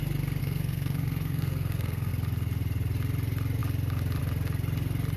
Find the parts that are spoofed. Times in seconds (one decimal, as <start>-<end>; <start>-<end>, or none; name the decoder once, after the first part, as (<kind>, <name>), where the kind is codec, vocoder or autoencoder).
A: 0.4-2.1 (codec, SNAC)